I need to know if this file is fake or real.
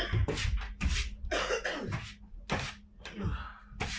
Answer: real